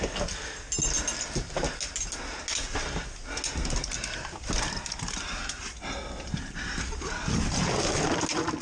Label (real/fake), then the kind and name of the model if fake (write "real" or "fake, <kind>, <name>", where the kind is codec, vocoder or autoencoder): real